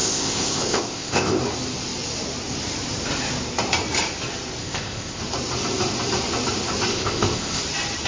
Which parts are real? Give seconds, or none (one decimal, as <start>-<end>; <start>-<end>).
1.4-4.6; 5.2-6.9; 7.6-8.1

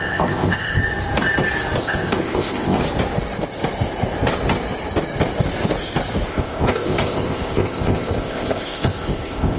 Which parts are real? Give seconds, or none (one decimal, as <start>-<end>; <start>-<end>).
0.8-1.8; 2.8-6.3

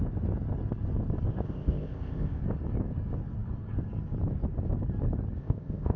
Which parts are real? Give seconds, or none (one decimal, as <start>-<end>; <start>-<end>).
0.0-1.3; 2.4-5.4

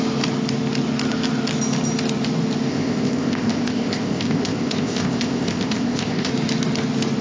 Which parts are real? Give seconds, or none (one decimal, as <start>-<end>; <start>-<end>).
0.0-2.7; 6.3-7.2

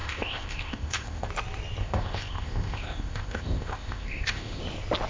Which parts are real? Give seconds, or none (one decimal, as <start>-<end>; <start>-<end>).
1.3-1.8; 4.6-5.1

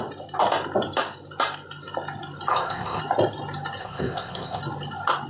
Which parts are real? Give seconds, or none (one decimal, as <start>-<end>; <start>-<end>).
0.0-2.5; 3.0-3.8; 4.6-5.3